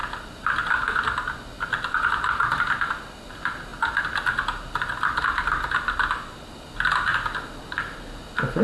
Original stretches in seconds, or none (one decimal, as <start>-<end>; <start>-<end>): 0.0-8.6